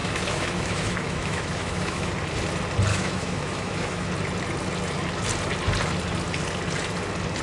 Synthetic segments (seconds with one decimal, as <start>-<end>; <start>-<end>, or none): 0.0-2.1; 2.9-4.1